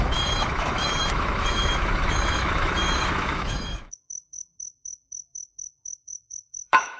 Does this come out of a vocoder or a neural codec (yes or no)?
yes